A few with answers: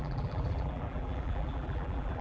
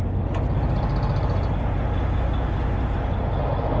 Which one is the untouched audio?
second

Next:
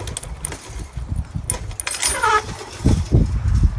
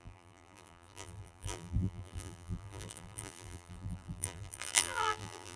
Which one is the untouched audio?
first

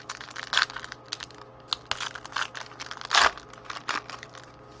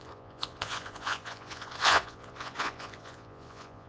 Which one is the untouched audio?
first